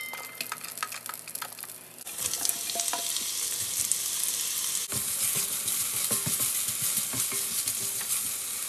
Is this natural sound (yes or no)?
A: yes